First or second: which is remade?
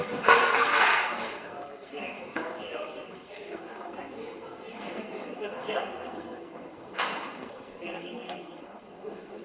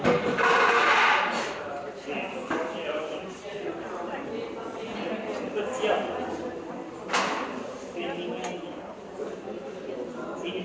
first